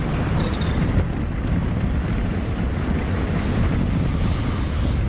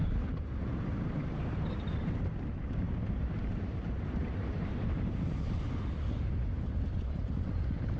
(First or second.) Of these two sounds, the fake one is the second